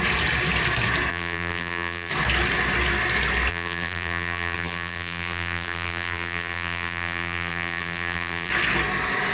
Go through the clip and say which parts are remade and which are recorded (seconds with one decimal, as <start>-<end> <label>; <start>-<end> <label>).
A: 0.0-1.1 recorded; 1.1-2.1 remade; 2.1-3.5 recorded; 3.5-8.5 remade; 8.5-9.3 recorded